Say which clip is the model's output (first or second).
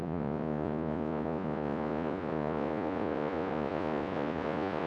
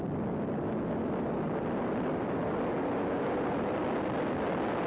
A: first